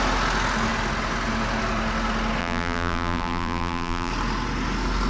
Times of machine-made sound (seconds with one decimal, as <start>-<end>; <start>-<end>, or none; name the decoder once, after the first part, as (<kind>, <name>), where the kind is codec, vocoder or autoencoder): 2.4-4.1 (vocoder, BigVGAN v2)